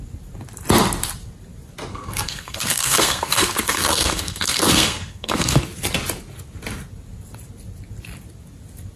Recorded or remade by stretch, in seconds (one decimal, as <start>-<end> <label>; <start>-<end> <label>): 0.0-1.9 recorded; 1.9-5.6 remade; 5.6-9.0 recorded